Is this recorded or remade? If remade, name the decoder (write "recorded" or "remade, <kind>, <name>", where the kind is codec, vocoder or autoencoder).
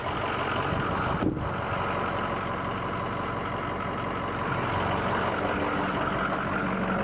recorded